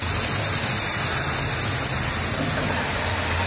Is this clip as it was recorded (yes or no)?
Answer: yes